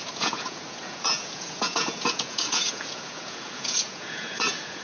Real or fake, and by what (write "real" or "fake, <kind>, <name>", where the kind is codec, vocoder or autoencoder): fake, vocoder, Vocos